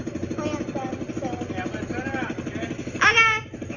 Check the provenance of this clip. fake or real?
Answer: real